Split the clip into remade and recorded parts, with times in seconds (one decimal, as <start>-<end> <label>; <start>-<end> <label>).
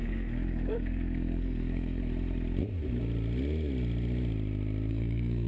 0.0-2.0 remade; 2.0-4.9 recorded; 4.9-5.5 remade